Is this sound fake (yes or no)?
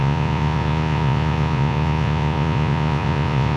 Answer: yes